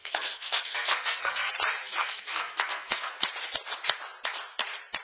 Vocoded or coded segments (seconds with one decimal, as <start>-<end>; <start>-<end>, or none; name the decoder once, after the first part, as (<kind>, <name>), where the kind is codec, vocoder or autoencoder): 0.0-1.5 (codec, SNAC); 2.0-3.1